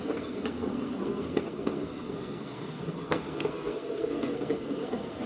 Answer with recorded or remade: remade